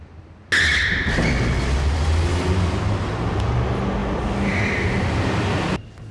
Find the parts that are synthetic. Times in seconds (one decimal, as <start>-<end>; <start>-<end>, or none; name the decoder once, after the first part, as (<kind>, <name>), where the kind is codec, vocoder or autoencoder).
none